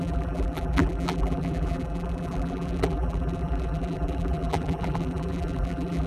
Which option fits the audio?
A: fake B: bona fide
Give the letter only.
A